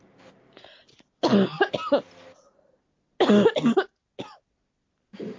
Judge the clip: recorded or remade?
recorded